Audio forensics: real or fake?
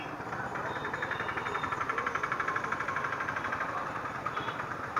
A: fake